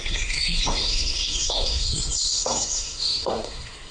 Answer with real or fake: fake